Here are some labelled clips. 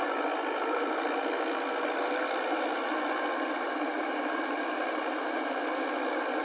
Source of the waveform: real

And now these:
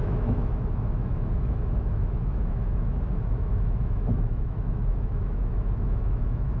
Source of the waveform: fake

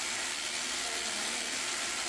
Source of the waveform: real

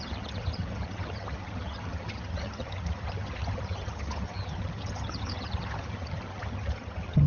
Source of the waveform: fake